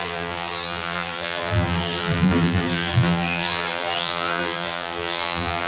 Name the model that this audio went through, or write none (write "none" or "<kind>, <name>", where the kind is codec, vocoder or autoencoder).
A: vocoder, BigVGAN v2